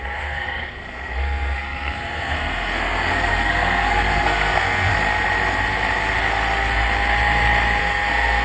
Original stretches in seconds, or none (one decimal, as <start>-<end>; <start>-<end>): 4.9-7.8